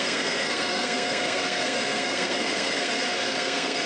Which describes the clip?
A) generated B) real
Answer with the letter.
A